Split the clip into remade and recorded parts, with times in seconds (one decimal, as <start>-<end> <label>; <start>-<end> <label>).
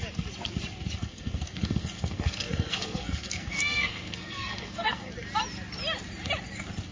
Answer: 0.0-1.0 recorded; 1.0-5.1 remade; 5.1-6.9 recorded